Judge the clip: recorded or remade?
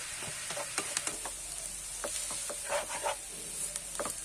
recorded